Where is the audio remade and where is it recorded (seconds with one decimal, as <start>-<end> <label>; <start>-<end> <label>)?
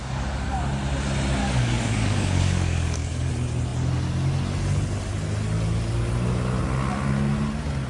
0.0-0.6 remade; 0.6-1.4 recorded; 1.4-3.3 remade; 3.3-7.9 recorded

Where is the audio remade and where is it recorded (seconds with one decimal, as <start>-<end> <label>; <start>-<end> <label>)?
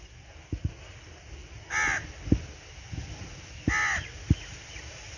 0.0-5.2 recorded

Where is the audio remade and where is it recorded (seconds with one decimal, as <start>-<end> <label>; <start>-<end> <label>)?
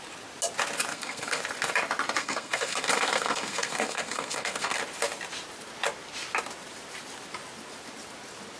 0.0-0.9 recorded; 0.9-1.4 remade; 1.4-2.2 recorded; 2.2-4.8 remade; 4.8-8.6 recorded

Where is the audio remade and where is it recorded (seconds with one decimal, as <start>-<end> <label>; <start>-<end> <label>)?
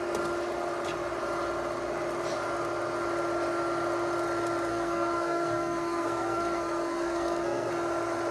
0.0-4.7 recorded; 4.7-7.7 remade; 7.7-8.3 recorded